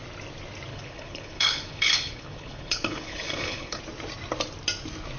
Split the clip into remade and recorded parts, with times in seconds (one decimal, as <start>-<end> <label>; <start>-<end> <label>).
0.0-0.7 recorded; 0.7-3.8 remade; 3.8-5.2 recorded